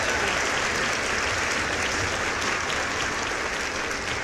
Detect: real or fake real